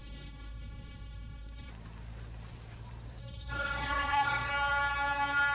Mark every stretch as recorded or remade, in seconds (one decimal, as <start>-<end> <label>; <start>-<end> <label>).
0.0-1.7 remade; 1.7-3.2 recorded; 3.2-4.5 remade; 4.5-5.5 recorded